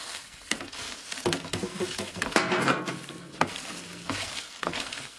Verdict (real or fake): fake